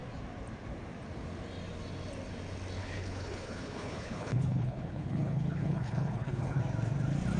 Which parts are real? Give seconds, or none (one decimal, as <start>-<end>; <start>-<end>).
0.0-2.8; 6.6-7.4